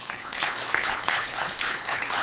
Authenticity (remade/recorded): remade